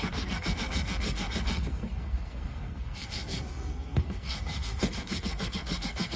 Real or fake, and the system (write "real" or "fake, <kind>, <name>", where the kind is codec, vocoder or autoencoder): fake, codec, SNAC